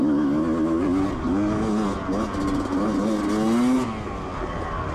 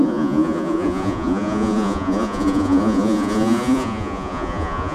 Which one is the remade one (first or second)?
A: second